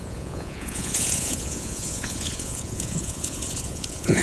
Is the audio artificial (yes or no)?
yes